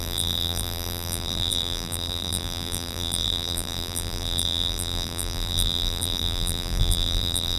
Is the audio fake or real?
fake